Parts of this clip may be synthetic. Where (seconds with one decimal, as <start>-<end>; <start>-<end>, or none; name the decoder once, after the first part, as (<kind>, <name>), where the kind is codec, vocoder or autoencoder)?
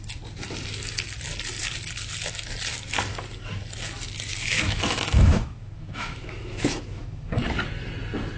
4.3-7.4 (autoencoder, DAC-VAE)